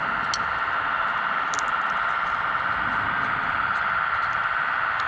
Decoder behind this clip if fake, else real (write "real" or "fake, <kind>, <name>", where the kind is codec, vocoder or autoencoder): real